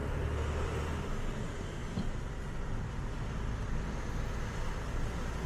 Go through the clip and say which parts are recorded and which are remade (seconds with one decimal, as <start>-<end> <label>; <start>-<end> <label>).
0.0-5.5 recorded